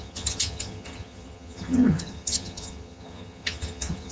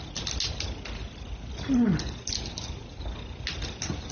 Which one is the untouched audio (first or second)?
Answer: second